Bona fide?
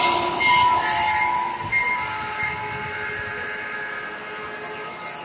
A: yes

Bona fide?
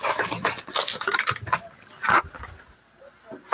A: yes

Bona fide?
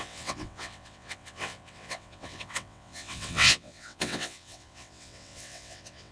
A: no